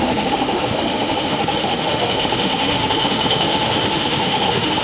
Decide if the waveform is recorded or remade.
remade